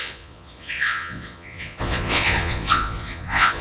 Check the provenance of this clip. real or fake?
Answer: fake